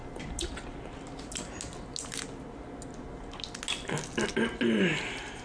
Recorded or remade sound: recorded